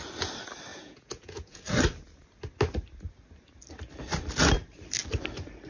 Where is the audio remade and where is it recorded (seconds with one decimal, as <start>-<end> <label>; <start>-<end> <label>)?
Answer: 0.0-0.7 recorded; 0.7-1.6 remade; 1.6-5.7 recorded